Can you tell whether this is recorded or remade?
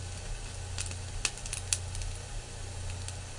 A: recorded